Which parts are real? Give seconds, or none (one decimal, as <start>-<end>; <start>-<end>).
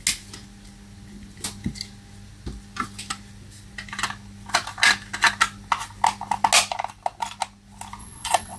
0.0-8.0